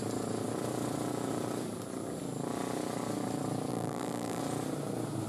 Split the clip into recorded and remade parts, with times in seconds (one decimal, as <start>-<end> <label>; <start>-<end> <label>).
0.0-3.7 recorded; 3.7-4.4 remade; 4.4-5.3 recorded